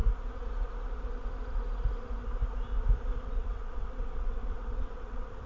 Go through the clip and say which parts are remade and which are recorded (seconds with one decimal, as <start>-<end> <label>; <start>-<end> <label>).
0.0-3.3 recorded; 3.3-5.5 remade